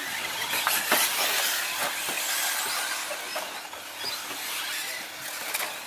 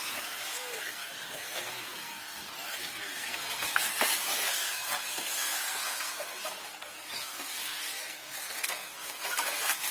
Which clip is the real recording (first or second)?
first